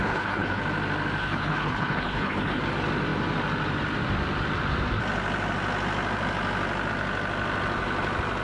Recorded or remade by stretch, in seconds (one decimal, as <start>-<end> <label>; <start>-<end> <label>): 0.0-0.6 remade; 0.6-1.2 recorded; 1.2-2.6 remade; 2.6-8.4 recorded